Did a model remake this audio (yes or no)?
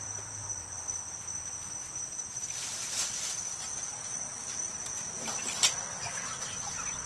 yes